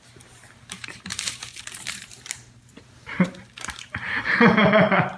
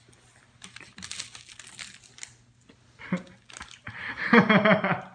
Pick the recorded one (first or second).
second